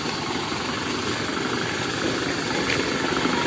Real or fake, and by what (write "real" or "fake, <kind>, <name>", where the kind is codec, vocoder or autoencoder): real